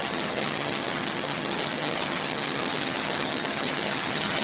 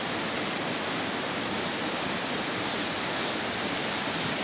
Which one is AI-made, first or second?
first